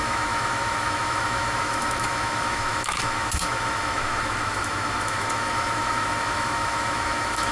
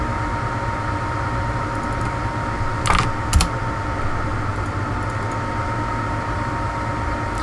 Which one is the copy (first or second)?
first